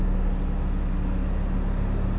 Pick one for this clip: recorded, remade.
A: recorded